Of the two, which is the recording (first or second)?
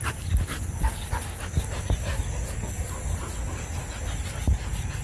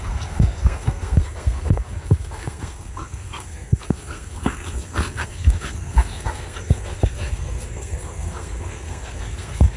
first